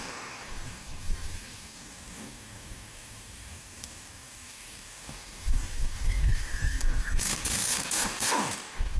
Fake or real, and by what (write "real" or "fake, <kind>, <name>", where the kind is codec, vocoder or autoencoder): fake, codec, DAC